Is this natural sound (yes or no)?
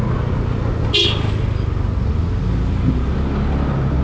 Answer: yes